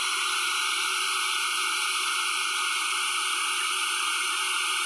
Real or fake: real